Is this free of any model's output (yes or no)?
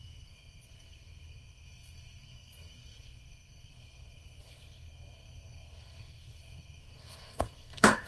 no